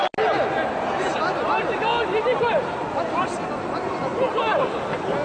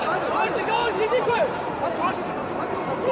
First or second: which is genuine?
first